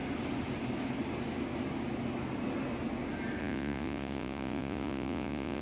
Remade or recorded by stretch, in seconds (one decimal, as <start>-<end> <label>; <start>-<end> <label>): 0.0-3.4 recorded; 3.4-5.6 remade